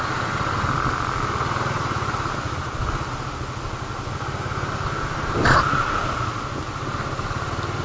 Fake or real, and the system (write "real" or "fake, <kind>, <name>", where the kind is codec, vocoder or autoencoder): real